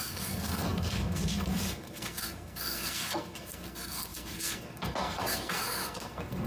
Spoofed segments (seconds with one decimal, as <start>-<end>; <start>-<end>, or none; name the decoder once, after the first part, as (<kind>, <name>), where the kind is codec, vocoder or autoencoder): 0.0-6.5 (codec, SNAC)